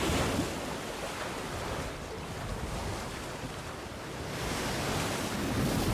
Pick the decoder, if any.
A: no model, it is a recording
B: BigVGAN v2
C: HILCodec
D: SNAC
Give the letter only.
A